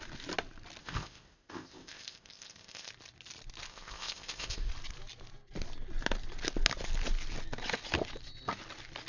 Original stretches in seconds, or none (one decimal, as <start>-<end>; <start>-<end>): 0.0-0.8; 2.9-3.7; 4.7-9.1